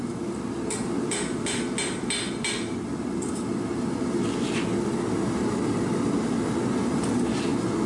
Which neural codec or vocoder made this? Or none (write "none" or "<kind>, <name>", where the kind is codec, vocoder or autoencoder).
none